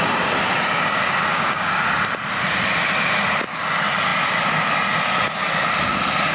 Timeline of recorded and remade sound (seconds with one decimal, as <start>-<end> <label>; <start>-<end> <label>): 0.0-1.3 recorded; 1.3-1.8 remade; 1.8-6.3 recorded

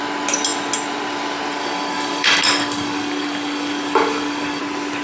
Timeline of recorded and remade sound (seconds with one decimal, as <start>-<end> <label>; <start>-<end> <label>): 0.0-1.6 recorded; 1.6-4.6 remade; 4.6-5.0 recorded

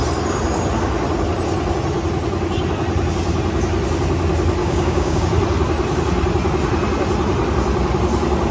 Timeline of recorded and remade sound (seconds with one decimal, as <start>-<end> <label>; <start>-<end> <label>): 0.0-4.6 recorded; 4.6-5.2 remade; 5.2-8.5 recorded

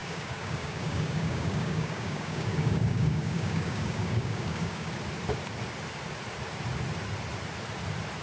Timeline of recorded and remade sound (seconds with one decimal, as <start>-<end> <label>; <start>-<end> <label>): 0.0-4.9 remade; 4.9-8.2 recorded

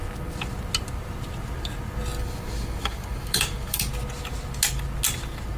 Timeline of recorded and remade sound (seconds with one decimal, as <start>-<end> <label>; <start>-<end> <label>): 0.0-2.2 recorded; 2.2-3.9 remade; 3.9-5.6 recorded